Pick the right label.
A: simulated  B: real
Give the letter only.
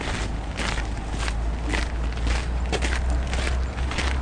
B